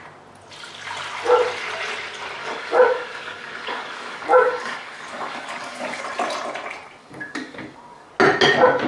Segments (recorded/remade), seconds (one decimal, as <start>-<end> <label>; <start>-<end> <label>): 0.0-2.4 recorded; 2.4-6.0 remade; 6.0-7.0 recorded; 7.0-8.1 remade; 8.1-8.9 recorded

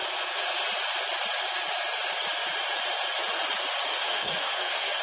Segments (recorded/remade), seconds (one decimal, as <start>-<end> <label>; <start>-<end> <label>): 0.0-4.0 recorded; 4.0-5.0 remade

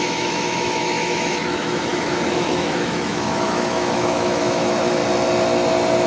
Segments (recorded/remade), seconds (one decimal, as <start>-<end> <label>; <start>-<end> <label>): 0.0-5.0 remade; 5.0-6.1 recorded

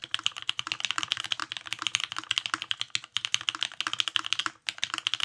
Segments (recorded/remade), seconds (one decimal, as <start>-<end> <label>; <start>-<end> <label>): 0.0-1.4 remade; 1.4-4.4 recorded; 4.4-5.2 remade